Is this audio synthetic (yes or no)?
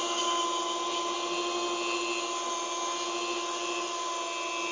no